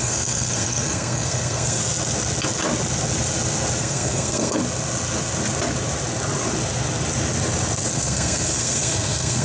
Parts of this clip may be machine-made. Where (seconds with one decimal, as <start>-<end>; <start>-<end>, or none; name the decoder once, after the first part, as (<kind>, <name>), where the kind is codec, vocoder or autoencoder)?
0.0-1.8 (codec, SNAC); 3.8-4.6; 7.9-9.4